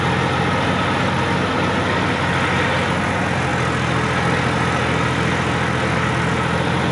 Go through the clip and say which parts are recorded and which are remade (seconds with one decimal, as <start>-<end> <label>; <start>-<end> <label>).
0.0-6.9 recorded